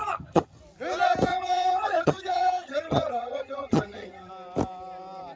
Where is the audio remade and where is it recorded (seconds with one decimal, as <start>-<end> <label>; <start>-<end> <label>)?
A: 0.0-0.6 remade; 0.6-1.3 recorded; 1.3-4.3 remade; 4.3-5.4 recorded